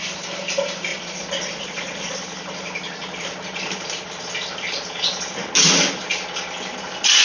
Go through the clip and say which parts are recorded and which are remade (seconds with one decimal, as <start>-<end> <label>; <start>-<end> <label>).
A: 0.0-0.9 recorded; 0.9-2.1 remade; 2.1-7.2 recorded